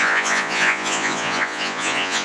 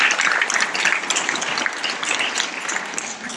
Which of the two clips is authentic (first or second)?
second